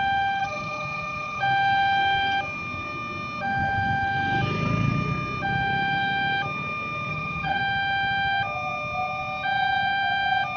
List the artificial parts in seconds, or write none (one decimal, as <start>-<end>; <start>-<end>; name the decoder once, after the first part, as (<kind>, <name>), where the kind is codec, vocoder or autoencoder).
0.4-1.4 (vocoder, HiFi-GAN); 7.1-7.6